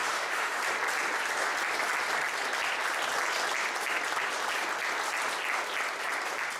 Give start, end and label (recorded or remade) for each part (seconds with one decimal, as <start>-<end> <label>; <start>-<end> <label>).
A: 0.0-0.6 remade; 0.6-6.6 recorded